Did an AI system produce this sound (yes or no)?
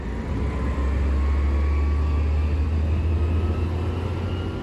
no